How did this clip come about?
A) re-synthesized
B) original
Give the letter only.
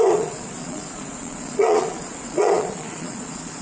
A